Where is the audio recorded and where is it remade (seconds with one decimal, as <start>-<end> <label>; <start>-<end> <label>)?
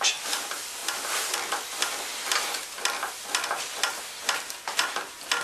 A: 0.0-5.4 recorded